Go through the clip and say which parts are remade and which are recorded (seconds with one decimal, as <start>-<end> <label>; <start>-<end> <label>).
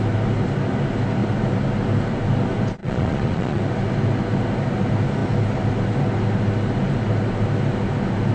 0.0-2.8 recorded; 2.8-3.6 remade; 3.6-8.3 recorded